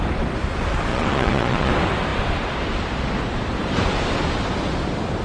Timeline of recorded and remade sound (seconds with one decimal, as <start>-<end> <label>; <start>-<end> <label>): 0.0-0.9 recorded; 0.9-1.7 remade; 1.7-5.2 recorded